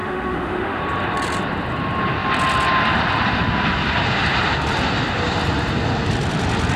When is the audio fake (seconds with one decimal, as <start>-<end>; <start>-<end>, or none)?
0.0-0.8